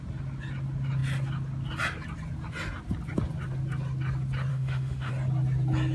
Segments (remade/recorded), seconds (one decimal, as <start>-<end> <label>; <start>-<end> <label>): 0.0-4.5 recorded; 4.5-5.1 remade; 5.1-5.9 recorded